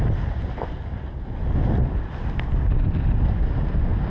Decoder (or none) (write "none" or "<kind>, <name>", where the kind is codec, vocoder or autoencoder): none